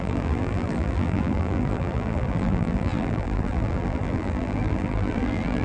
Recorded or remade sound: remade